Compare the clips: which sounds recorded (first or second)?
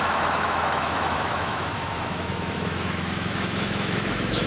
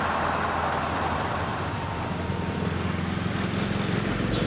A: second